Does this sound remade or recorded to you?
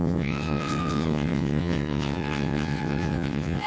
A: remade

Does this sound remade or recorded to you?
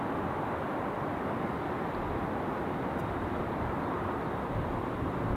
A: remade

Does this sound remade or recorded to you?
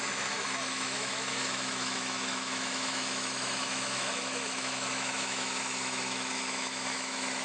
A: remade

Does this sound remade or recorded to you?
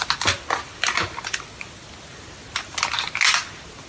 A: recorded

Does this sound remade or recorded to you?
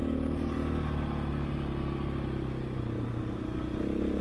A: recorded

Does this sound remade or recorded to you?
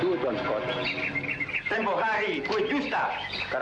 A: recorded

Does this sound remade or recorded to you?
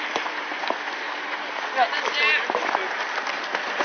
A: recorded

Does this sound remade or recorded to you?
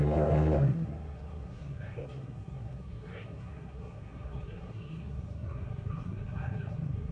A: remade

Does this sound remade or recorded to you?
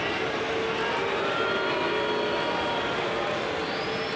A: recorded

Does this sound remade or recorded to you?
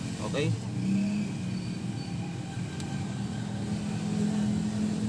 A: recorded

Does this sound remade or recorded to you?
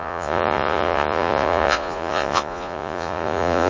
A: remade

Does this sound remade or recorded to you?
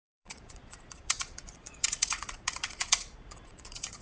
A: remade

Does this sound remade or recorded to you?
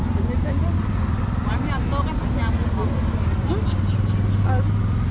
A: recorded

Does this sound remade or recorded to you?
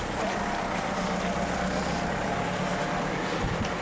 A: recorded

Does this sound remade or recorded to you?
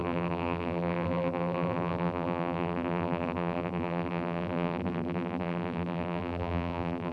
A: remade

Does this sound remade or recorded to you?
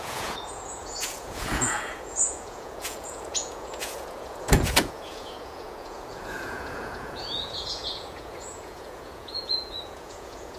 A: remade